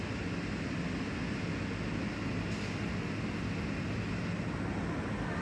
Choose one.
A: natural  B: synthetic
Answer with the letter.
A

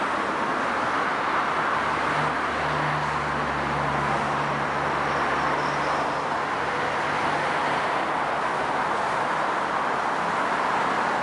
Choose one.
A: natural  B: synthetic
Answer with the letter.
A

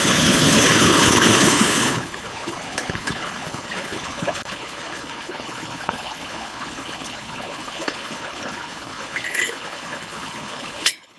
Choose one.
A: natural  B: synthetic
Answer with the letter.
B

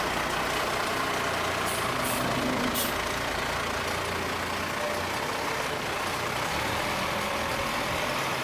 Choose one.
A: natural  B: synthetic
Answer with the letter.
A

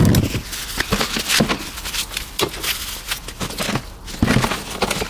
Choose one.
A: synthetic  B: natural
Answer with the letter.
B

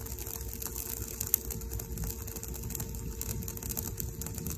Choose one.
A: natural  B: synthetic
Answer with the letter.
A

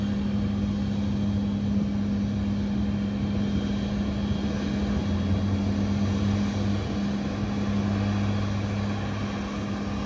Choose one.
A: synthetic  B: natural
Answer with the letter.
B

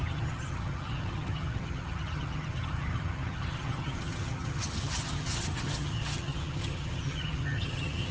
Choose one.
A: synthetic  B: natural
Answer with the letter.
A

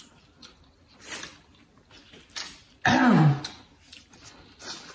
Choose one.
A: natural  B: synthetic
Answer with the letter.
A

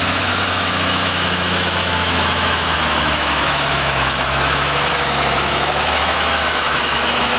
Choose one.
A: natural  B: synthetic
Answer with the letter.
B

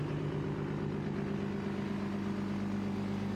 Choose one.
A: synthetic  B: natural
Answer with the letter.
B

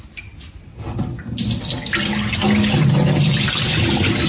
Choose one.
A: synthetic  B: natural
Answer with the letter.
B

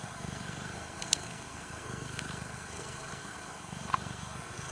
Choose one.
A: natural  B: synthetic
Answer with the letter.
B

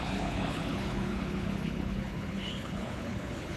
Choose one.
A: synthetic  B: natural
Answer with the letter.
A